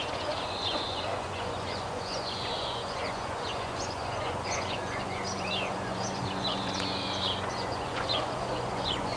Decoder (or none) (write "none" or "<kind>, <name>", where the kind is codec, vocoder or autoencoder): vocoder, Vocos